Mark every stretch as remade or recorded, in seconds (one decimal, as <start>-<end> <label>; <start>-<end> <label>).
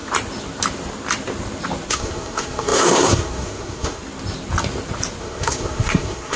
0.0-1.9 recorded; 1.9-4.0 remade; 4.0-5.2 recorded; 5.2-6.4 remade